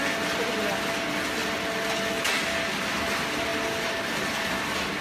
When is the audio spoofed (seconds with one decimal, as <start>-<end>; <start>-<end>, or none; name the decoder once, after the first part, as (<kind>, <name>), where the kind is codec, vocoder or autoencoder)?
none